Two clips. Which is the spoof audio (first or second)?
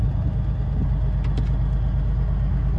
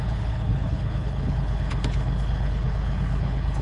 second